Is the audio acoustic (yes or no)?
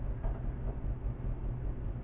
yes